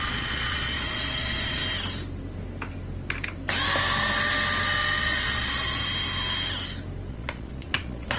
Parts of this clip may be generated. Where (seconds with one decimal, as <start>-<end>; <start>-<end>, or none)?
0.0-1.6; 5.0-5.8; 7.1-8.2